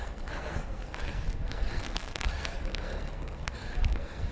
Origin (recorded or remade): remade